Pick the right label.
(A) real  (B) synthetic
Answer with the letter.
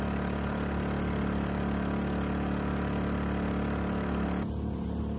A